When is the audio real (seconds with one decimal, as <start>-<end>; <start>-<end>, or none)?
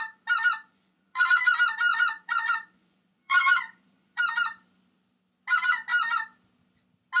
0.0-0.7; 1.5-1.9; 4.2-7.2